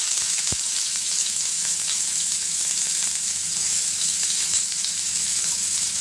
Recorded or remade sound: remade